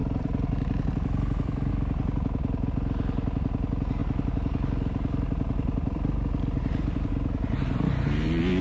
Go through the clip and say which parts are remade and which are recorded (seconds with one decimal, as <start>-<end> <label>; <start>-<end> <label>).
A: 0.0-1.7 remade; 1.7-4.0 recorded; 4.0-7.1 remade; 7.1-8.6 recorded